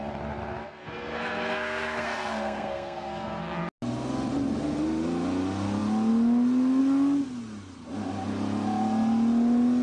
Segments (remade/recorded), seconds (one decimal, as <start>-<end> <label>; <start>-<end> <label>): 0.0-0.6 recorded; 0.6-3.4 remade; 3.4-9.8 recorded